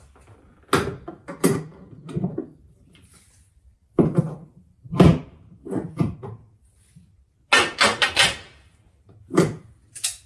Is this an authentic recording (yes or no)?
yes